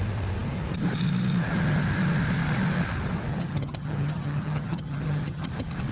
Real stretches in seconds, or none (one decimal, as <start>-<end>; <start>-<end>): 0.0-3.3; 5.5-5.9